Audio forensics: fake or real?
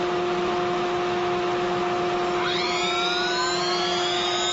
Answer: real